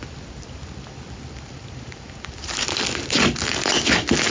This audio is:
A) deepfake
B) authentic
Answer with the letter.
B